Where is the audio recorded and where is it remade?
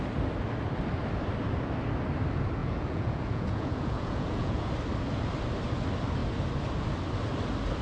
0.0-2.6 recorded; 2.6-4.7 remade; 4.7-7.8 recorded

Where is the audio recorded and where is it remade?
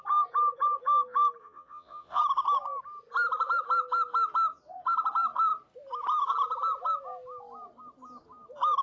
0.0-1.4 recorded; 1.4-2.2 remade; 2.2-8.8 recorded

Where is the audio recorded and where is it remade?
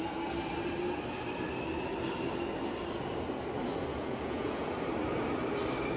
0.0-3.9 recorded; 3.9-4.7 remade; 4.7-6.0 recorded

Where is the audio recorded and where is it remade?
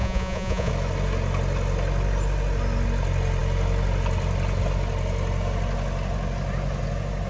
0.0-0.7 remade; 0.7-7.3 recorded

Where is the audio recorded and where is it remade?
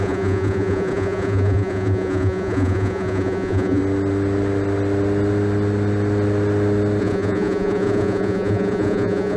0.0-3.8 remade; 3.8-7.0 recorded; 7.0-9.4 remade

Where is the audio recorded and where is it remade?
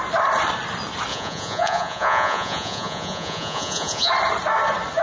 0.0-1.1 recorded; 1.1-4.1 remade; 4.1-5.0 recorded